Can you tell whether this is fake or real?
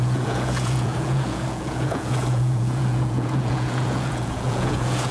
fake